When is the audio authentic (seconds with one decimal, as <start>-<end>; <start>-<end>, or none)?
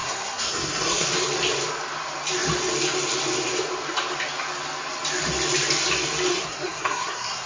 1.1-6.3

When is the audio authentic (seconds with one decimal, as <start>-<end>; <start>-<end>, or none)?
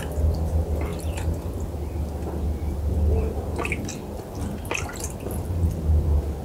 0.0-6.4